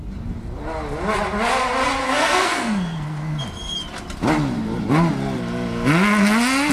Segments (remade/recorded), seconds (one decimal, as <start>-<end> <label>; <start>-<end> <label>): 0.0-2.0 recorded; 2.0-3.4 remade; 3.4-6.7 recorded